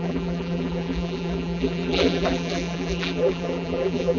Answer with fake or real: fake